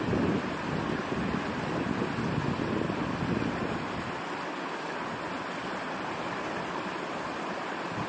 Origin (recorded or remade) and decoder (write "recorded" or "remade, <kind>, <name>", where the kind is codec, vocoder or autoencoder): recorded